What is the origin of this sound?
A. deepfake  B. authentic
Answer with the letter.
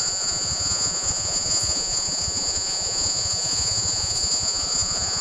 A